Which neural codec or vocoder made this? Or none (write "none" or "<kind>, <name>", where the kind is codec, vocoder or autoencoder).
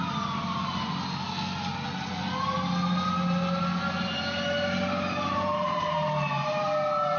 none